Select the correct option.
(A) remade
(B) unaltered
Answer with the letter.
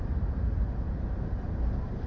B